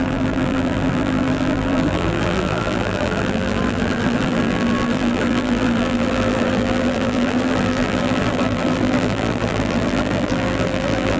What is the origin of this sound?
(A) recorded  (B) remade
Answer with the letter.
B